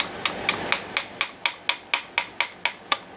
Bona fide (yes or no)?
yes